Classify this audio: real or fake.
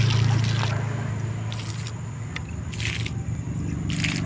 real